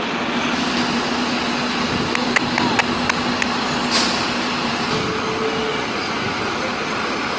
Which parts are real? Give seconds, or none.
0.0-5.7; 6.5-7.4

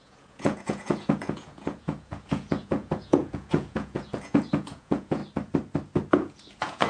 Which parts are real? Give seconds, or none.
5.2-6.1

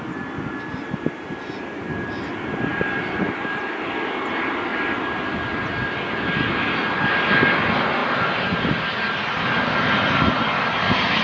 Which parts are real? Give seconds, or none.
0.0-2.7; 3.6-11.2

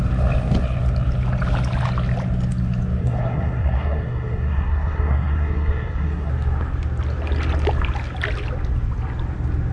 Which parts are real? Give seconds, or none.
0.0-3.0; 6.3-9.7

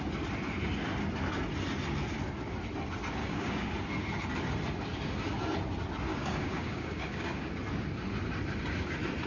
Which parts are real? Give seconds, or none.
0.0-3.2; 3.7-6.1; 7.5-9.3

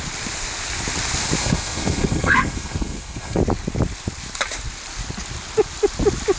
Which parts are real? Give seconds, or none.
0.0-1.4; 3.4-6.4

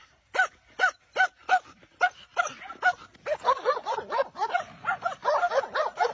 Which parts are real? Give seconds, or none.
0.8-6.1

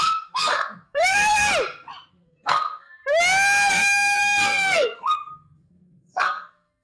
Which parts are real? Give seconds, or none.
1.5-2.1; 3.0-3.7